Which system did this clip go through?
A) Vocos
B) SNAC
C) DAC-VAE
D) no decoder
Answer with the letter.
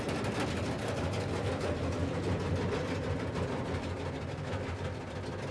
D